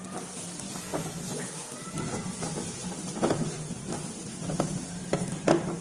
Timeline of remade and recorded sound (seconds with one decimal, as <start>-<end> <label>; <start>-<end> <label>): 0.0-5.8 recorded